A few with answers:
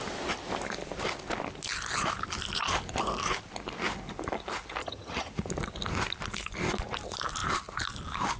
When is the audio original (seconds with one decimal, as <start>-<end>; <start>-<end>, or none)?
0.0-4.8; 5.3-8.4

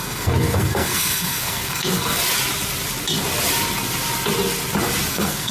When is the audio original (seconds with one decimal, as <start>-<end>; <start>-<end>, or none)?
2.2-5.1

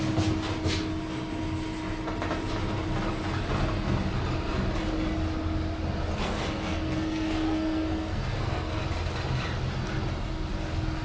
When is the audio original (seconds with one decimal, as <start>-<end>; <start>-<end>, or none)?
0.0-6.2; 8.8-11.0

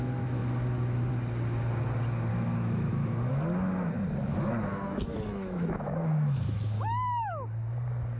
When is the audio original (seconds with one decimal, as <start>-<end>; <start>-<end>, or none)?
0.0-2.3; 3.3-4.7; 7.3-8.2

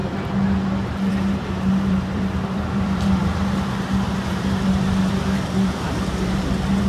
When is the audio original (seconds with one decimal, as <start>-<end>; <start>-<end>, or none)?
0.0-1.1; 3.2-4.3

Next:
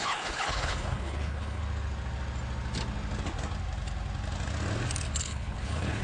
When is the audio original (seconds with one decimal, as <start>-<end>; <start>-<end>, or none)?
1.6-5.2

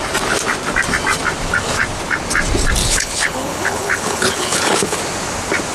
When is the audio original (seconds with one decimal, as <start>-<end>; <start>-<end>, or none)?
0.0-2.8; 5.0-5.7